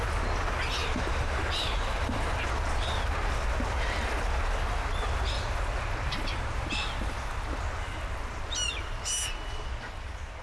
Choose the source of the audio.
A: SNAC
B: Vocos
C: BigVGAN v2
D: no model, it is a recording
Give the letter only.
D